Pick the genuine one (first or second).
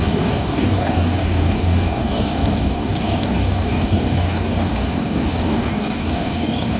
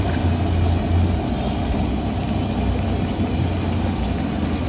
second